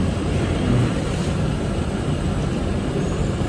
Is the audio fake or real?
fake